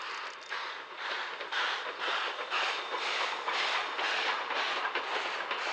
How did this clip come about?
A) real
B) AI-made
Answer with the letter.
A